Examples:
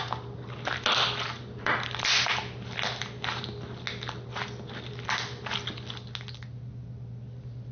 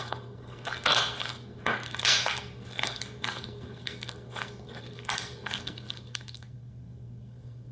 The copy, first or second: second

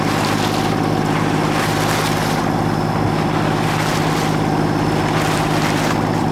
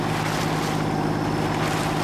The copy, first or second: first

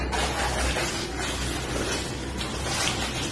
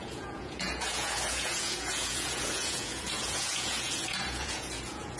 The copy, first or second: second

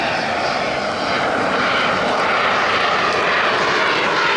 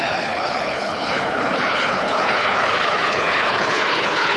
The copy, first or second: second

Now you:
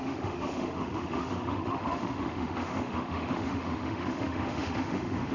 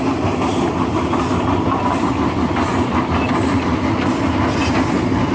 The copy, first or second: first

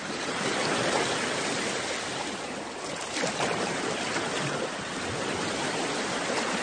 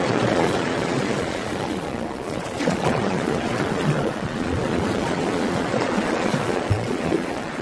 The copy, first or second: second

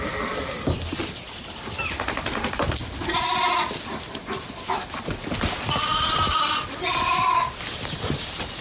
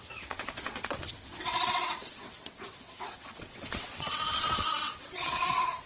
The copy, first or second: second